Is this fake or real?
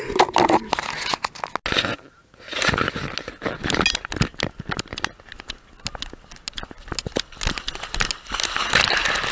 real